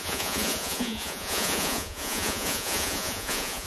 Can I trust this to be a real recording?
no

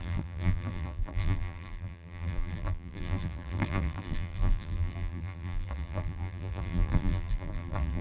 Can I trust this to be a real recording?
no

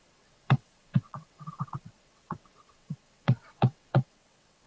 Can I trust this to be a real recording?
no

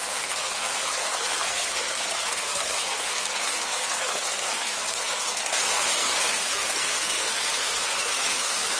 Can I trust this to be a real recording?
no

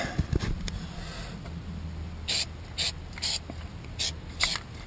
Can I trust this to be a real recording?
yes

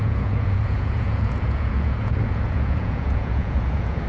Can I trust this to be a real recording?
no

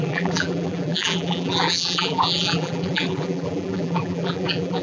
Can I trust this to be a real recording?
no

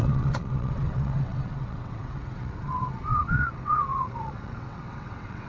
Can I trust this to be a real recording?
no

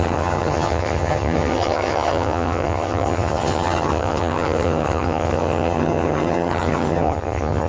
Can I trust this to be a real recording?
no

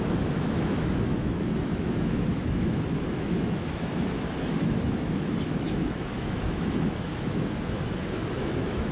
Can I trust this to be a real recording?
no